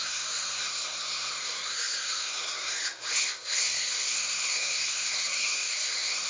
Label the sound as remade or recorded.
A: remade